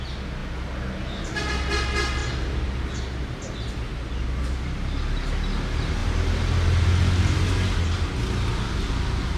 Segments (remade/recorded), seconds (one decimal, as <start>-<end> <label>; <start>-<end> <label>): 0.0-9.4 recorded